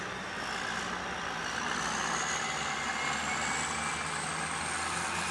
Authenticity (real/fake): real